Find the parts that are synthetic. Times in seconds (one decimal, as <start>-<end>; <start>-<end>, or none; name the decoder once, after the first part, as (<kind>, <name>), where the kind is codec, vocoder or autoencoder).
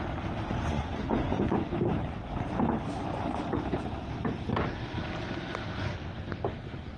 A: 0.5-1.7 (vocoder, Vocos); 3.0-3.6